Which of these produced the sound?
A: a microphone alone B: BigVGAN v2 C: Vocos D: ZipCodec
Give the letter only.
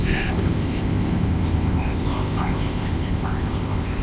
D